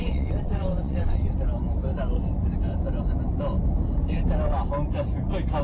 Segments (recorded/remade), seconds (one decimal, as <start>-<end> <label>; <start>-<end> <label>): 0.0-1.3 remade; 1.3-5.6 recorded